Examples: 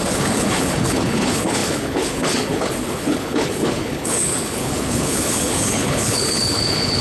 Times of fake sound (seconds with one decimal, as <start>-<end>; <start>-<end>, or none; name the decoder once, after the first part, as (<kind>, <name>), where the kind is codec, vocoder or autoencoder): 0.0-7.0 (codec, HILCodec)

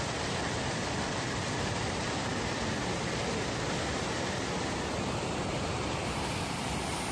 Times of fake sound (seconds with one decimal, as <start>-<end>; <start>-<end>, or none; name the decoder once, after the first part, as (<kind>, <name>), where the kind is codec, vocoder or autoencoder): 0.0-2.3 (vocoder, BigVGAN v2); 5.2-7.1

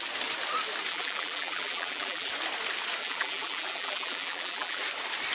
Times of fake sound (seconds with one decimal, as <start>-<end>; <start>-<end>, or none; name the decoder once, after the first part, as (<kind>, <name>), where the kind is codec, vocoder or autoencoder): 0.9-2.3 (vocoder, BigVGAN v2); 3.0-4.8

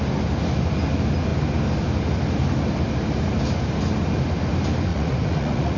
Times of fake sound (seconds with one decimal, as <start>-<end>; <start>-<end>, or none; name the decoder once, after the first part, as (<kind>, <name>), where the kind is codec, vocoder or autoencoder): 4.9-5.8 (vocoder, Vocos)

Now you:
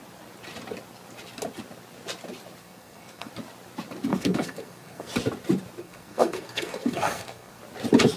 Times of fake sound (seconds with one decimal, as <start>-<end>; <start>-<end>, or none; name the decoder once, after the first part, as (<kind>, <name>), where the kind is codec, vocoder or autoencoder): 2.6-3.3 (codec, SNAC); 4.1-5.1; 5.8-7.6